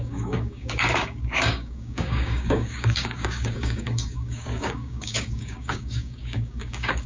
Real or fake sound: fake